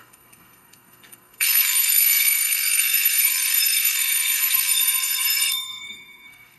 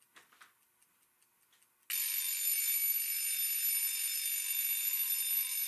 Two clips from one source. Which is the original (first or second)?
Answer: second